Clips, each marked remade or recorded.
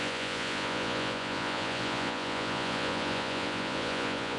remade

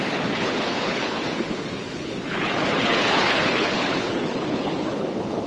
remade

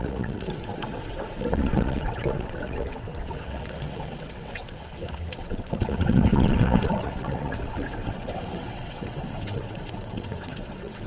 remade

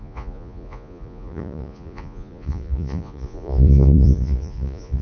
remade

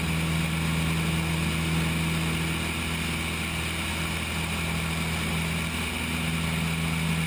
recorded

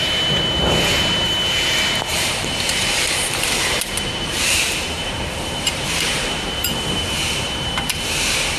remade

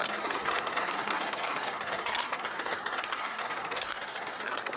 remade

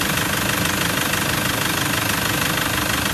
recorded